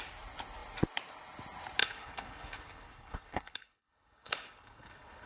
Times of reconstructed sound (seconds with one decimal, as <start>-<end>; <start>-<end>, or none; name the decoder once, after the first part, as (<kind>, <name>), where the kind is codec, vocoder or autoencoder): 1.8-5.3 (codec, HILCodec)